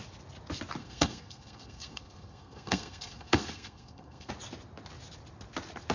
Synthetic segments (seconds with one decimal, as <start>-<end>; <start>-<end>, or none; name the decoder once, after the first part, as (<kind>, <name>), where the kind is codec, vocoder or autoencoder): 0.8-4.3 (codec, SNAC)

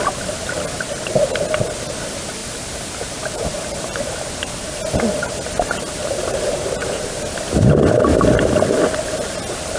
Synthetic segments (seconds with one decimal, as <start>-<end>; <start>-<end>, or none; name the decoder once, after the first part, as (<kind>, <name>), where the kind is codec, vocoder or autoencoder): 2.4-4.5 (vocoder, BigVGAN v2); 6.0-7.3

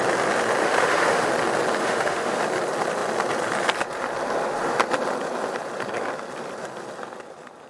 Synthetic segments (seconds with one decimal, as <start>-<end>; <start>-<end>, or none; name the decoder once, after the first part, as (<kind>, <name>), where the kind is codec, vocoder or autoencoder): 0.6-1.3 (autoencoder, DAC-VAE); 1.8-2.4